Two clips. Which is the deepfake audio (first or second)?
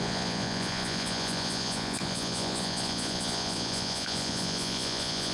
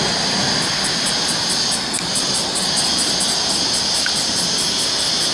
first